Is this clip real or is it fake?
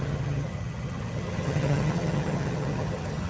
fake